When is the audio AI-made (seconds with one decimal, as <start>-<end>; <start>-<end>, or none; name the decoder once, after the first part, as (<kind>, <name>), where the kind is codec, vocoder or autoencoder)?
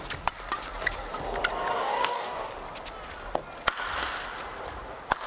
1.7-2.5 (codec, DAC)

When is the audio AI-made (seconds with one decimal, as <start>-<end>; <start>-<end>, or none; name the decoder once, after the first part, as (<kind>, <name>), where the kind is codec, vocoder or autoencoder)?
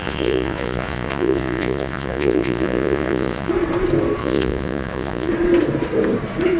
0.0-3.5 (vocoder, Vocos); 4.2-5.3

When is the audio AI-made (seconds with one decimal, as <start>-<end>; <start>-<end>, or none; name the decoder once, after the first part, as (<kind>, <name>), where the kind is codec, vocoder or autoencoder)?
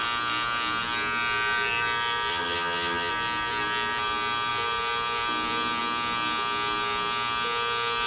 2.3-3.1 (vocoder, HiFi-GAN)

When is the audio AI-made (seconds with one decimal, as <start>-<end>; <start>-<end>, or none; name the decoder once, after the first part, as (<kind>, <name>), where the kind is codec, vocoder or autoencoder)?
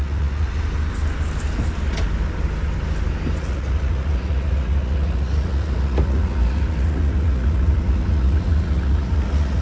0.0-0.5 (vocoder, Vocos); 3.4-9.6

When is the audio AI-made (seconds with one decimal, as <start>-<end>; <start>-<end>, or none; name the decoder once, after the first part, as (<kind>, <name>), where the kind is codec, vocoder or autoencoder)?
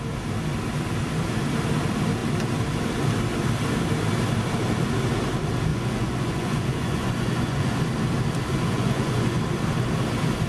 5.7-7.8 (vocoder, Vocos); 8.5-9.4